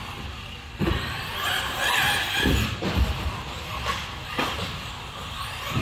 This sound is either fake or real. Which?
real